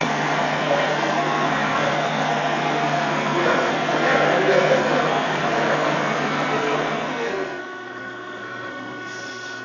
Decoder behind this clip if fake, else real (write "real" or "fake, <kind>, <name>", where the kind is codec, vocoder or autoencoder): fake, codec, SNAC